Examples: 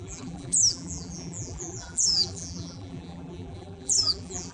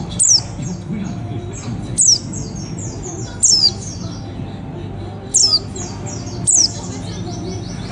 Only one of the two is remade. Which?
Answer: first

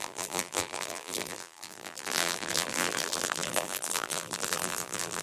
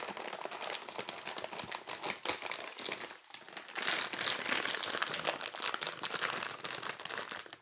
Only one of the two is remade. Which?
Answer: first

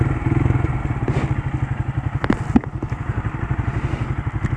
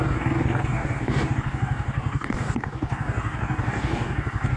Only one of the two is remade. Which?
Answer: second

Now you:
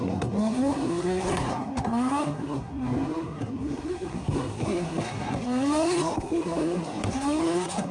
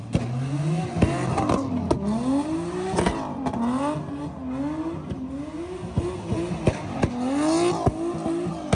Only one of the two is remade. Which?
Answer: first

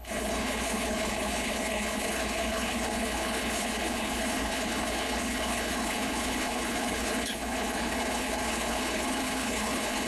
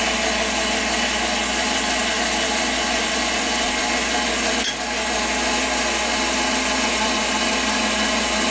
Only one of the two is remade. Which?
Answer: first